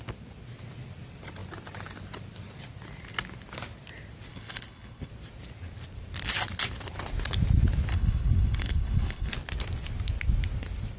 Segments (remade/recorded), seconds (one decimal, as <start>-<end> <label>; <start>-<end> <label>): 0.0-4.3 recorded; 4.3-5.1 remade; 5.1-7.9 recorded; 7.9-9.3 remade; 9.3-11.0 recorded